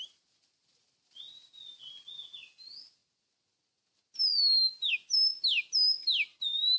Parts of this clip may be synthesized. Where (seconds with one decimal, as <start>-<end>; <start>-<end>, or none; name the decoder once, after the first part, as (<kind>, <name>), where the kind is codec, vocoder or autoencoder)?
none